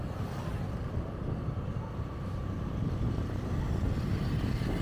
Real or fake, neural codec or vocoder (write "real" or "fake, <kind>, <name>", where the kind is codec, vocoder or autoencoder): real